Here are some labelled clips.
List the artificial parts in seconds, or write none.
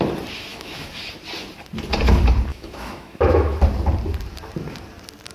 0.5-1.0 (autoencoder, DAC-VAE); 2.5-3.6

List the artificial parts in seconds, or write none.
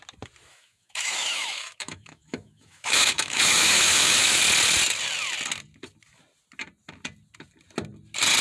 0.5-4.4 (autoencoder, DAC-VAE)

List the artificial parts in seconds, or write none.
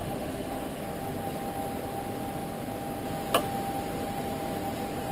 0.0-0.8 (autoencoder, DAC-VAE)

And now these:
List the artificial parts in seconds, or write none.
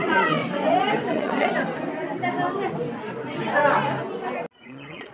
0.0-0.4 (vocoder, Vocos); 1.1-1.5; 4.6-5.1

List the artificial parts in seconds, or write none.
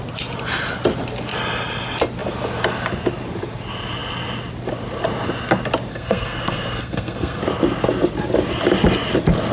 5.9-7.4 (codec, SNAC)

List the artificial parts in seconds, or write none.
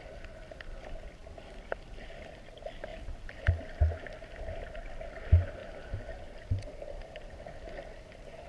5.6-7.4 (vocoder, BigVGAN v2)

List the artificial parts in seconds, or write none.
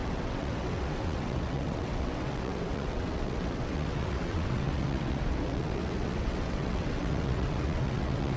0.0-8.4 (vocoder, WaveNeXt)